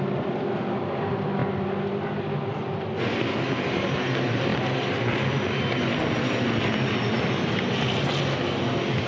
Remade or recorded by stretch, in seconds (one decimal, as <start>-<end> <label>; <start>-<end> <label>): 0.0-9.1 recorded